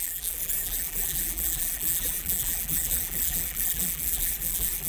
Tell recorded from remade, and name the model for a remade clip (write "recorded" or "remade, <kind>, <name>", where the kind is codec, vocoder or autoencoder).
remade, vocoder, BigVGAN v2